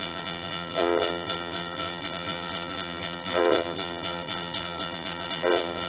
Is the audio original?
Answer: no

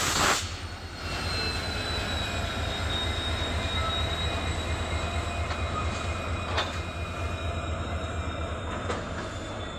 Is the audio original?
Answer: yes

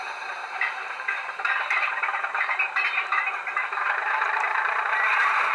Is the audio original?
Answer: no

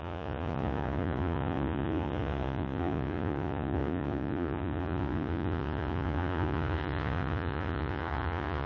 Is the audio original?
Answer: no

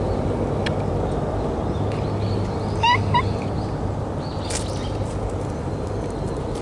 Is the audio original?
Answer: yes